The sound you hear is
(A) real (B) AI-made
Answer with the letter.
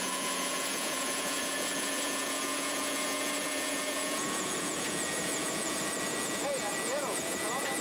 B